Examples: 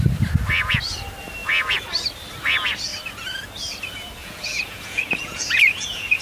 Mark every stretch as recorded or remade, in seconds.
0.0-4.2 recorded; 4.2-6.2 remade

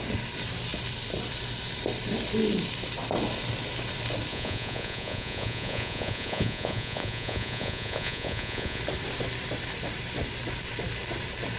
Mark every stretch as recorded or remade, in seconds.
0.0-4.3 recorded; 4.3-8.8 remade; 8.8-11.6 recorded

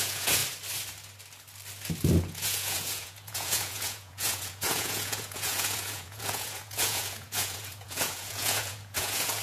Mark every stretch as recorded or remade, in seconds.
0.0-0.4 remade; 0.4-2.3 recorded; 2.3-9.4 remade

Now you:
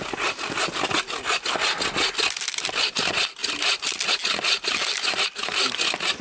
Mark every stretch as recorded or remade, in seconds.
0.0-6.2 recorded

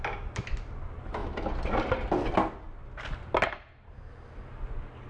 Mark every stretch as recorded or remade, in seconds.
0.0-5.1 recorded

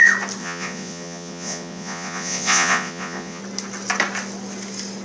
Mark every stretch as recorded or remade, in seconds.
0.0-0.4 recorded; 0.4-3.4 remade; 3.4-5.0 recorded

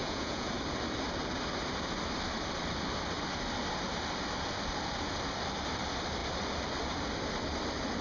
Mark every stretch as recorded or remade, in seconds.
0.0-0.5 remade; 0.5-8.0 recorded